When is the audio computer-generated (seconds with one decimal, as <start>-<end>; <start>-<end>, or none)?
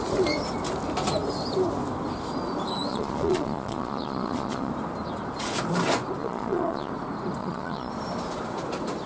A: 2.9-4.7; 6.2-6.9; 7.4-7.9